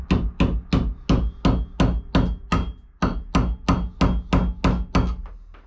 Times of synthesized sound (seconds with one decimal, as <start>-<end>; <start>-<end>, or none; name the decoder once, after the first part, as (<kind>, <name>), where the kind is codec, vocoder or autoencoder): none